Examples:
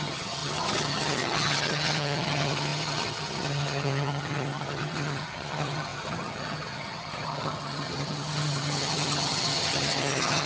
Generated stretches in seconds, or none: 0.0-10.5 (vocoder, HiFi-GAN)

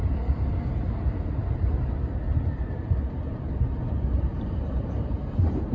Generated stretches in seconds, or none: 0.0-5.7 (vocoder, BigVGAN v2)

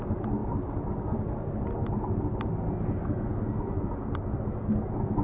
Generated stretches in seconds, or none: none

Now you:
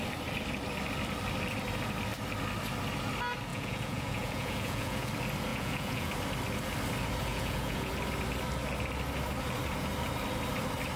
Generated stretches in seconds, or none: 3.5-5.1 (vocoder, Vocos); 5.5-6.1; 7.3-7.9

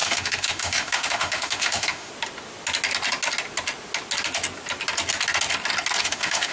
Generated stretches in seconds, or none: 0.0-2.1 (autoencoder, DAC-VAE); 6.0-6.5